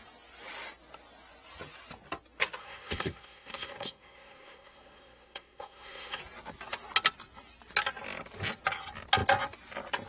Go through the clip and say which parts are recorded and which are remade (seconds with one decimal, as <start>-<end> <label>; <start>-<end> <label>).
0.0-2.6 recorded; 2.6-6.2 remade; 6.2-10.1 recorded